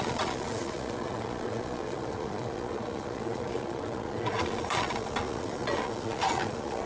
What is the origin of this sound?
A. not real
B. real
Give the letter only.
A